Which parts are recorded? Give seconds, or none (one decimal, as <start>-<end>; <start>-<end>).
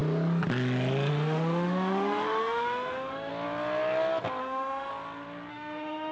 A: 0.0-1.1; 3.3-4.4; 4.9-5.5